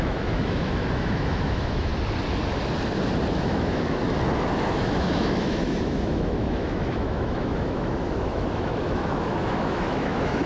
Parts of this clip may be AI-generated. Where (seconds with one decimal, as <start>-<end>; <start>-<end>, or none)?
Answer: 0.0-1.9; 3.3-4.0; 4.7-10.5